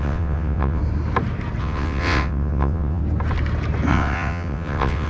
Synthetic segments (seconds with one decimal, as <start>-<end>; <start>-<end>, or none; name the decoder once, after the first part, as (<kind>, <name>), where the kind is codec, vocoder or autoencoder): 0.0-0.8 (vocoder, WaveNeXt); 1.6-3.0; 3.9-5.1